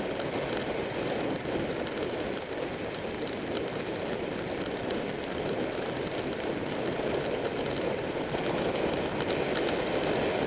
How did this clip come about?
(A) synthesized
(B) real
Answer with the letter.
B